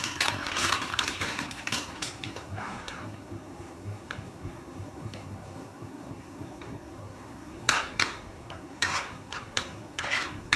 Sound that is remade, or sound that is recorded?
remade